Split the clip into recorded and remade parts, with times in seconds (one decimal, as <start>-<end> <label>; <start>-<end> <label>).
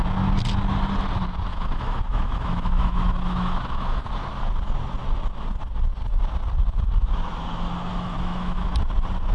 0.0-1.5 recorded; 1.5-4.1 remade; 4.1-7.9 recorded; 7.9-8.7 remade; 8.7-9.3 recorded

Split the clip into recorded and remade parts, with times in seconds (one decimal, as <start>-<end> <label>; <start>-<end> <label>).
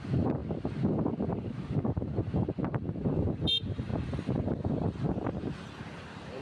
0.0-0.4 remade; 0.4-1.2 recorded; 1.2-3.9 remade; 3.9-5.8 recorded; 5.8-6.4 remade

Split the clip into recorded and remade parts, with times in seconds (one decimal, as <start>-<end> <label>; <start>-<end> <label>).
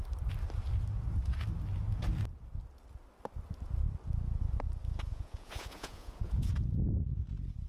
0.0-5.1 recorded; 5.1-6.5 remade; 6.5-7.7 recorded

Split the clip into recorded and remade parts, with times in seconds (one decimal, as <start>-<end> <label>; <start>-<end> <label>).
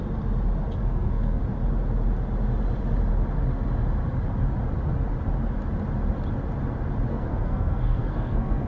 0.0-0.8 recorded; 0.8-1.4 remade; 1.4-7.1 recorded; 7.1-8.7 remade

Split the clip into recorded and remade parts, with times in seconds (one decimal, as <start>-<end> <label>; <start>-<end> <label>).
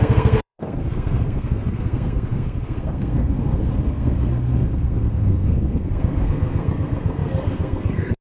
0.0-8.2 remade